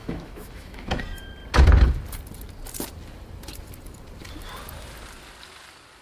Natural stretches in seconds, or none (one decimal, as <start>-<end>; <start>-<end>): 1.0-6.0